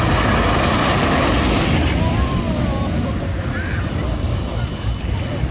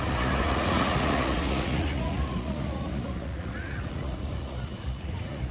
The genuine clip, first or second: first